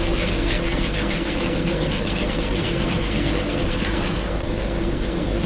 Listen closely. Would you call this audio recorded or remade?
remade